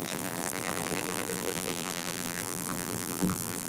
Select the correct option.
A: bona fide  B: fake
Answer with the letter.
B